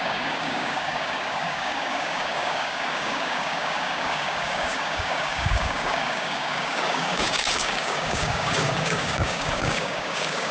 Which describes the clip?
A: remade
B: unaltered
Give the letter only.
A